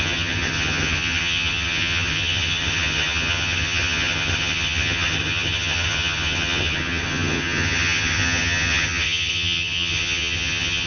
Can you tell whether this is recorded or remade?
remade